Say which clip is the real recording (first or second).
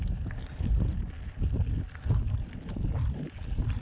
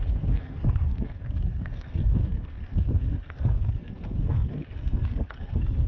first